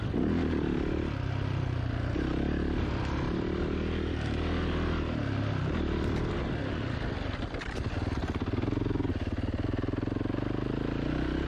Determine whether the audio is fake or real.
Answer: real